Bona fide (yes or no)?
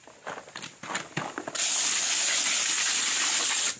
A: yes